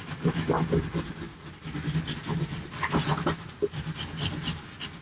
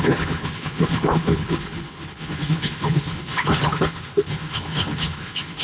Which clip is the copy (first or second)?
second